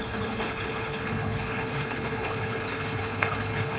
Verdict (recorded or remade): remade